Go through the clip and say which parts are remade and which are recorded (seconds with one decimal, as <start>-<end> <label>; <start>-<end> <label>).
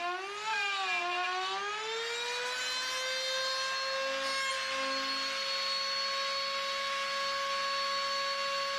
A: 0.0-8.8 recorded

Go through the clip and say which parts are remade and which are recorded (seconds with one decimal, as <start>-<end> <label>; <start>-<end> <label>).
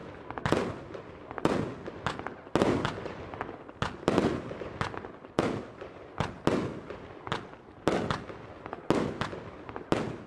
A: 0.0-10.3 recorded